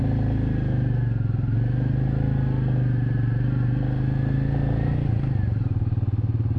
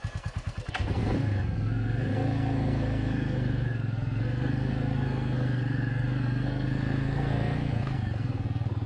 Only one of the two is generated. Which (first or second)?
second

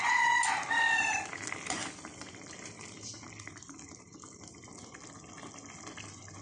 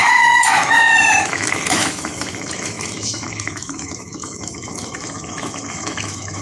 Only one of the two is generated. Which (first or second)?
second